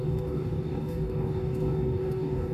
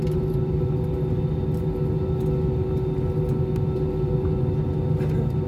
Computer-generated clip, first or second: first